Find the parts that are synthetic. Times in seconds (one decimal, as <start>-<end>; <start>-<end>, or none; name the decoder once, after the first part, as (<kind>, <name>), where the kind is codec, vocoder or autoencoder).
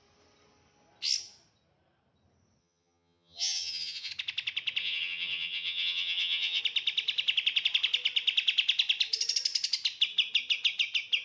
2.6-4.1 (vocoder, HiFi-GAN); 4.8-6.6